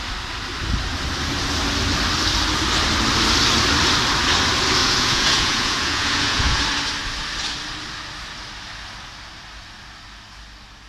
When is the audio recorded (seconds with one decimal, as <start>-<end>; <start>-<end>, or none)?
0.0-4.8; 6.6-10.9

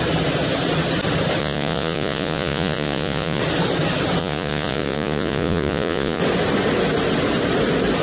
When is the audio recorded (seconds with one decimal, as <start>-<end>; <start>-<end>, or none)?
0.0-1.4; 3.4-4.2; 6.2-8.0

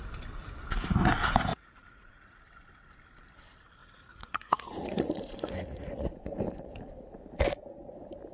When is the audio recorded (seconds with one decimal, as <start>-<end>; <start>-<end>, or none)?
0.0-1.5; 2.4-3.8; 6.4-8.3